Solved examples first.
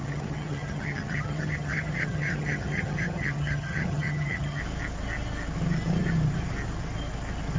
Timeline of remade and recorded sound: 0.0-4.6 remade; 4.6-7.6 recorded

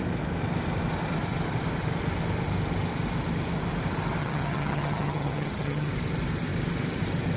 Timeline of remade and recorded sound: 0.0-4.2 recorded; 4.2-5.9 remade; 5.9-7.4 recorded

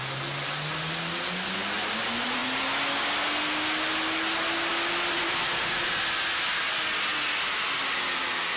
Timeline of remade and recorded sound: 0.0-8.6 recorded